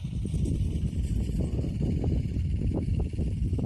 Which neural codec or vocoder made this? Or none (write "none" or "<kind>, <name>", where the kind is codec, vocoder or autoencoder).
vocoder, BigVGAN v2